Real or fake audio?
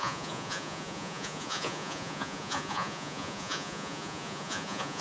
fake